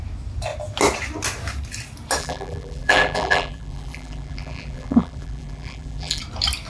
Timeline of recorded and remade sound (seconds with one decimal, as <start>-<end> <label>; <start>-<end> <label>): 0.0-2.2 recorded; 2.2-6.2 remade; 6.2-6.7 recorded